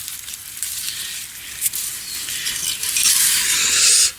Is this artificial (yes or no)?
no